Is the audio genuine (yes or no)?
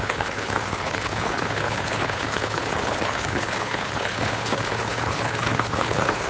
no